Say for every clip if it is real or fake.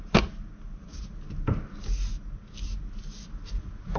real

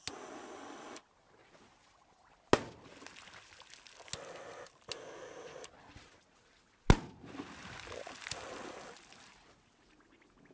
real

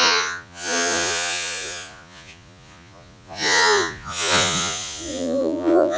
fake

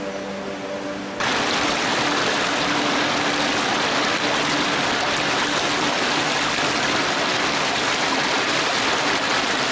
real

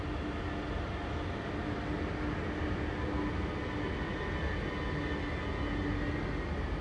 real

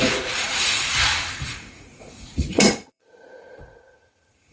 fake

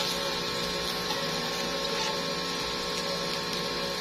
real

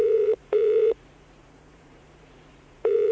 fake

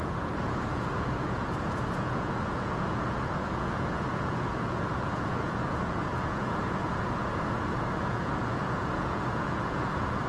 fake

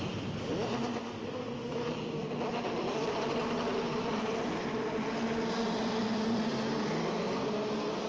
real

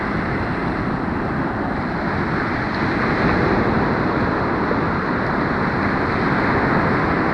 real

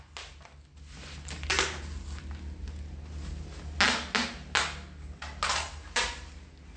real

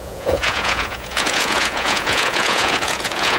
fake